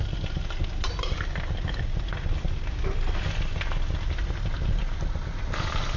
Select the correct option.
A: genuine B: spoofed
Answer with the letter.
A